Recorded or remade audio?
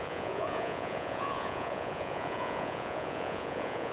remade